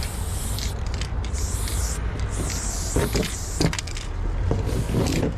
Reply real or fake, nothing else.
real